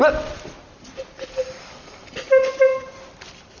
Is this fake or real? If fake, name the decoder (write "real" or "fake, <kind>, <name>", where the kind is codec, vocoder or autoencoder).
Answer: real